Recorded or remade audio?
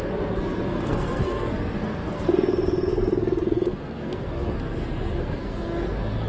remade